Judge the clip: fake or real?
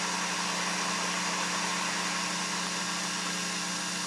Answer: real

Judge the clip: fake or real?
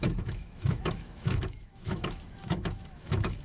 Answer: fake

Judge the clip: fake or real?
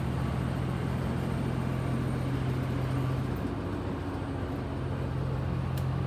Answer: real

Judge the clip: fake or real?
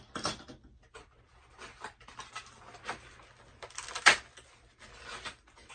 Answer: real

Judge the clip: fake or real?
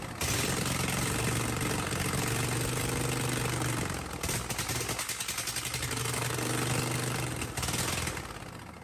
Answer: real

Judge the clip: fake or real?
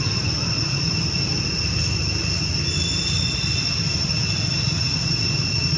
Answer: real